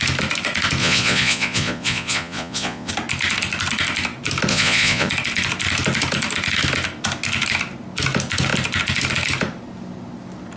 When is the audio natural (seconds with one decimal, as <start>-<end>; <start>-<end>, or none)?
0.0-0.8; 2.9-4.5; 5.1-10.6

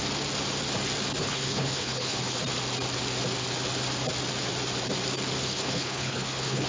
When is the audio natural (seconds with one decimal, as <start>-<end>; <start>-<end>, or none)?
0.0-1.2; 2.4-5.4

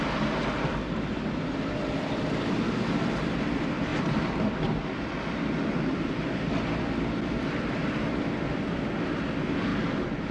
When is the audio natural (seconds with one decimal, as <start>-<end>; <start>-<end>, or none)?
0.0-10.3

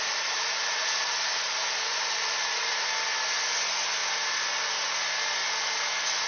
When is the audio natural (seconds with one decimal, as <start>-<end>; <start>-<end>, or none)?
2.9-6.3

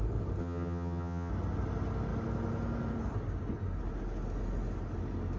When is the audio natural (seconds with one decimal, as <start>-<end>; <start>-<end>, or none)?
0.0-0.4; 1.3-5.4

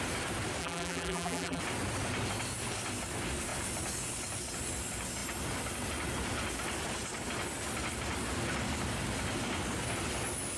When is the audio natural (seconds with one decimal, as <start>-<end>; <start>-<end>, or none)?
0.0-0.6; 1.6-10.6